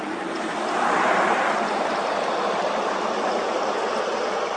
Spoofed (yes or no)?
no